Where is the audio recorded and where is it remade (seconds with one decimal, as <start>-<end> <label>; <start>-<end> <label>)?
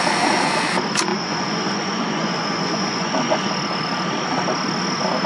0.0-1.1 recorded; 1.1-3.5 remade; 3.5-5.3 recorded